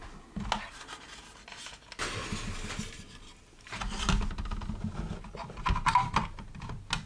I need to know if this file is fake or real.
real